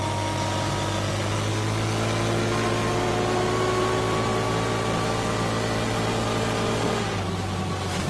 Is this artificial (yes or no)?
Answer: no